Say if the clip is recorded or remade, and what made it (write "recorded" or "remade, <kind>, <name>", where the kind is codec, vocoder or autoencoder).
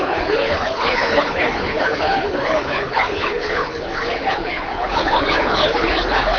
remade, codec, HILCodec